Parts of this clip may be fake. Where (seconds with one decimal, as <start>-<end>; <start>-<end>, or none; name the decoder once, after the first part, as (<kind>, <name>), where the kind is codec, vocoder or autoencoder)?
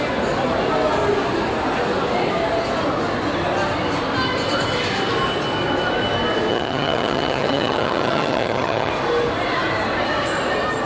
6.5-8.9 (vocoder, HiFi-GAN)